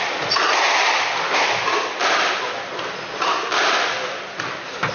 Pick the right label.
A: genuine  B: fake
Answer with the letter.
A